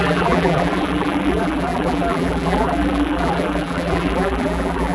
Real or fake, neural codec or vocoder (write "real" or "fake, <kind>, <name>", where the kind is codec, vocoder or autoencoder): fake, vocoder, BigVGAN v2